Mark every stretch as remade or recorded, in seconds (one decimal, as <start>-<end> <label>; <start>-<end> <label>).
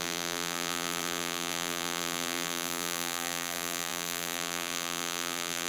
0.0-5.7 remade